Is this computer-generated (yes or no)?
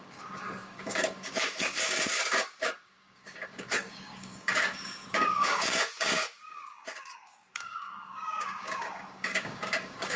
yes